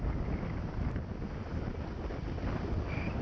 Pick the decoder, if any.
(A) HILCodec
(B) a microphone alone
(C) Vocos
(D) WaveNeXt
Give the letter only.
B